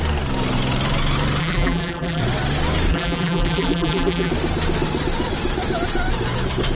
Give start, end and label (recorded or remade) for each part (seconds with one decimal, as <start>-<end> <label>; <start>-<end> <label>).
0.0-1.4 recorded; 1.4-2.2 remade; 2.2-2.9 recorded; 2.9-4.3 remade; 4.3-6.7 recorded